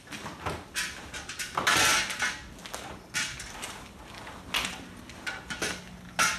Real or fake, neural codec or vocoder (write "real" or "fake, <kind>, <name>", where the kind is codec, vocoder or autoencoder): real